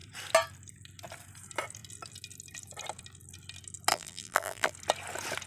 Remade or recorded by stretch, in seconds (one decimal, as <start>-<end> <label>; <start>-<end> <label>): 0.0-3.9 recorded; 3.9-4.7 remade; 4.7-5.5 recorded